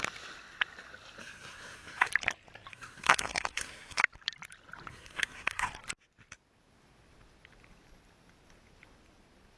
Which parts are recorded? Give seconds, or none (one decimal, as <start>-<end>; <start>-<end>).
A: 0.0-1.2; 2.1-2.7; 4.0-4.9; 5.7-9.6